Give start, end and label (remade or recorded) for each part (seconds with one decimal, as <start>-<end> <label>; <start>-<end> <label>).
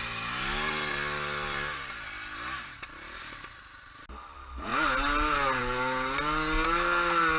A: 0.0-7.4 recorded